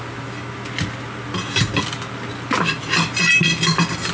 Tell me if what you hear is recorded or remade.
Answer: recorded